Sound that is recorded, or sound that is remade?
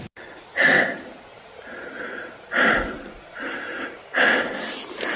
recorded